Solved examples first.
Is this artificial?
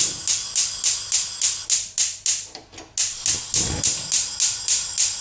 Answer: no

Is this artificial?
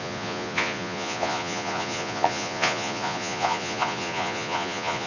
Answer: yes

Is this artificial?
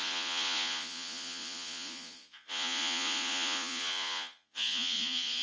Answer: yes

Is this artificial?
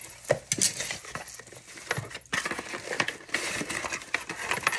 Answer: no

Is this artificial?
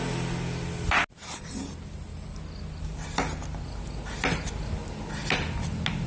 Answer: no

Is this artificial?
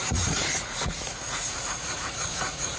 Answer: yes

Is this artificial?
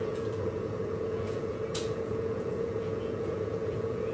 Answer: yes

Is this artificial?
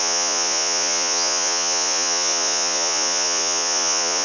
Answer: yes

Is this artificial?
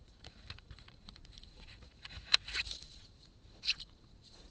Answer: yes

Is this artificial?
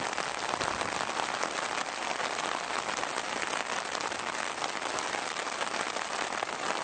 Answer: no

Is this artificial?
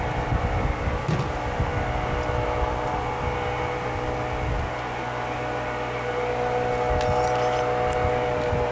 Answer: no